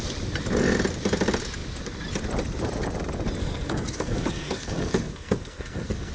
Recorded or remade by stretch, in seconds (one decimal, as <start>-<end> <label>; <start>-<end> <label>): 0.0-3.4 recorded; 3.4-6.1 remade